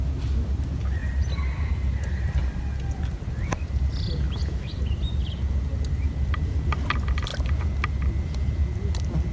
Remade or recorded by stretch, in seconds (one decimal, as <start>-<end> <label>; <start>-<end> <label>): 0.0-1.0 recorded; 1.0-1.7 remade; 1.7-2.4 recorded; 2.4-3.3 remade; 3.3-7.3 recorded; 7.3-8.1 remade; 8.1-9.3 recorded